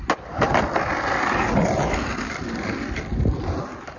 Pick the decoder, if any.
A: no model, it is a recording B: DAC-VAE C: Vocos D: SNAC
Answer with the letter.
A